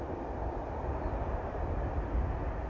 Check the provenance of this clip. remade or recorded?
recorded